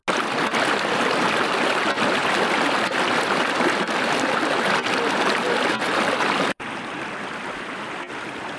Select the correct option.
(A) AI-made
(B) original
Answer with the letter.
B